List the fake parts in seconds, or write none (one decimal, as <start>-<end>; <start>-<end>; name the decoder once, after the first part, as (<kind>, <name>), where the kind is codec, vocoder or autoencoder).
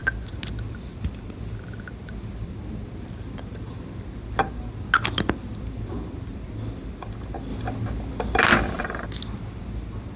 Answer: none